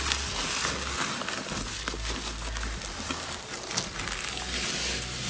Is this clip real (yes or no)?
yes